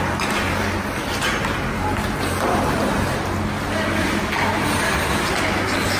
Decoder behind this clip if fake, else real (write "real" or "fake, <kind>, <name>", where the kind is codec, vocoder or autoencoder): real